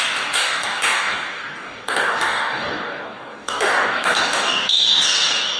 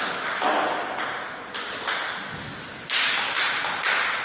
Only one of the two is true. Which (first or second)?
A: second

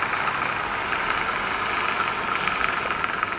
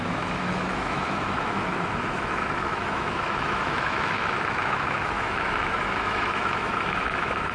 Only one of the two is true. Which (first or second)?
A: first